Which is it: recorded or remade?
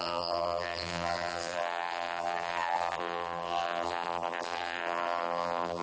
remade